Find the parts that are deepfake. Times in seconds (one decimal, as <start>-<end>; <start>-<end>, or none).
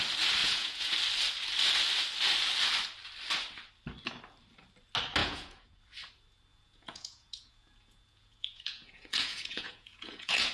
0.4-0.9; 5.2-5.8; 6.5-10.5